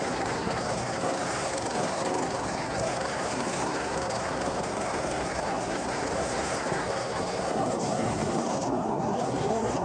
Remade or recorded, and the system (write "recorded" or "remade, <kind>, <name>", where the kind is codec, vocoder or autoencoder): remade, codec, SNAC